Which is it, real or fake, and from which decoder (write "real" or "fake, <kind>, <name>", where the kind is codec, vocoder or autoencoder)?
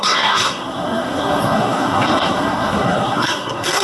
fake, codec, SNAC